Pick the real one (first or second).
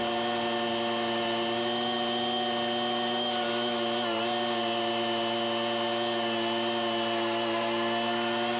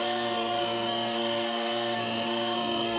first